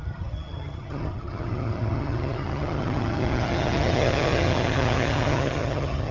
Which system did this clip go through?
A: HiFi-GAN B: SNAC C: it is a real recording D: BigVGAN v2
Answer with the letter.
A